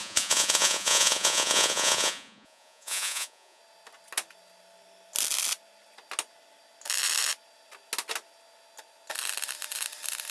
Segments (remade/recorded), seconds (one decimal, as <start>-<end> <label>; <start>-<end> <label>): 0.0-3.6 remade; 3.6-10.3 recorded